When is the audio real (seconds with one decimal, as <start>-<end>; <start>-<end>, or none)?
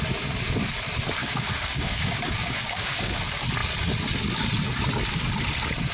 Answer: 0.0-1.2; 3.2-5.9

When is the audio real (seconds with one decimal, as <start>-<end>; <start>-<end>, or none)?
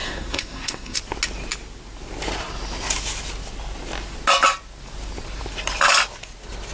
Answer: 1.0-6.7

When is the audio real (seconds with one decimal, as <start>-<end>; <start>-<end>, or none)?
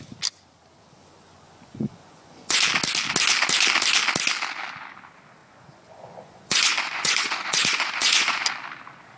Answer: 0.0-1.0; 2.6-5.4; 8.4-9.2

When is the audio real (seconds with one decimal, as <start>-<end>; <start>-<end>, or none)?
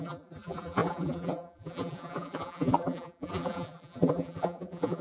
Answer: none